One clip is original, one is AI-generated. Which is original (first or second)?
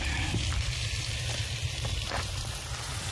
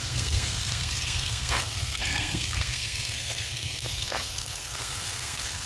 first